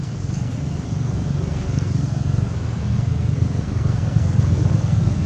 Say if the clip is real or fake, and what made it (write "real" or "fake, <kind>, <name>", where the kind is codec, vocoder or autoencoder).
fake, codec, SNAC